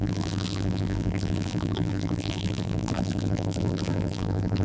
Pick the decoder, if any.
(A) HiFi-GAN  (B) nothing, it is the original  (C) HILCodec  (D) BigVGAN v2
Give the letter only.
D